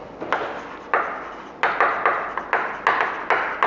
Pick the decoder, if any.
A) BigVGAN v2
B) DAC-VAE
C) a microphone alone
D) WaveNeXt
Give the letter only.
C